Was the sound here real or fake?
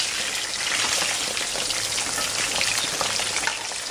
real